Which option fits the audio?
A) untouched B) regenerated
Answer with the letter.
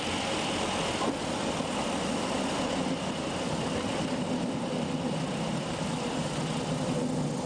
A